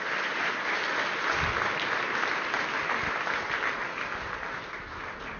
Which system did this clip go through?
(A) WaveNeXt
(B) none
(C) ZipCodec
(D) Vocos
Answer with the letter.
B